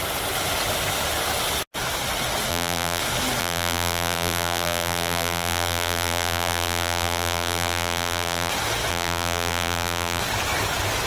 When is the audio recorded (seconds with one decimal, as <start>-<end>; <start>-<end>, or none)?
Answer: 0.0-2.5; 3.0-3.4; 8.5-8.9; 10.2-11.1

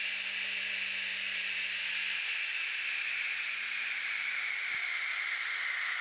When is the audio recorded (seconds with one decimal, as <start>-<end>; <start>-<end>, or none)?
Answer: 0.0-1.1; 1.8-3.3; 5.1-6.0

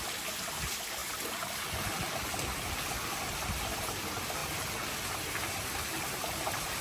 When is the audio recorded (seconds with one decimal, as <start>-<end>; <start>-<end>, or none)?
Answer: 0.0-6.8

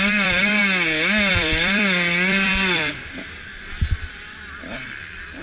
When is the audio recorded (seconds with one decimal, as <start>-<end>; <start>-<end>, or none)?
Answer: 0.6-1.3

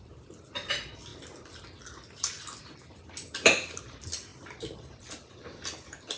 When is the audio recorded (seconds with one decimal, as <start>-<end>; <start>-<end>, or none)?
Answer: 1.1-2.6

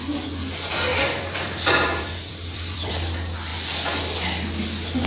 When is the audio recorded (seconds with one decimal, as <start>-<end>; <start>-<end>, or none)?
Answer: 0.0-0.9; 2.9-5.1